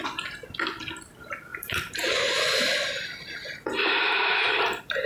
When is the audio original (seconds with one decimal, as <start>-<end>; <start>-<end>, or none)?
0.0-1.5; 2.4-3.8